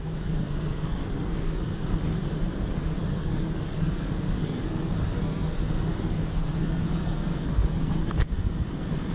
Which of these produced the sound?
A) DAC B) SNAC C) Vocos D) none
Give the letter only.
B